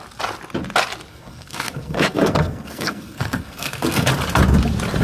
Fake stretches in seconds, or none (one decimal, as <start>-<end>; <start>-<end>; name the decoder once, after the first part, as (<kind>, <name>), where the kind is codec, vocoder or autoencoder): 1.1-4.1 (codec, SNAC)